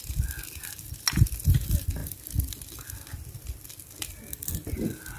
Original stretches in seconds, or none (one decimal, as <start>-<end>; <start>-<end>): none